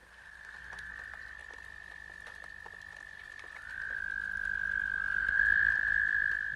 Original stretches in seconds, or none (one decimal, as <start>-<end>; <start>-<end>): 0.9-6.6